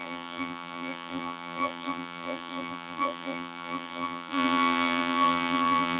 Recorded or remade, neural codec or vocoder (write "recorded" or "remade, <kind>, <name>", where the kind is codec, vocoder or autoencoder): remade, vocoder, BigVGAN v2